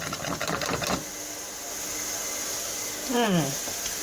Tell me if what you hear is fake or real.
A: real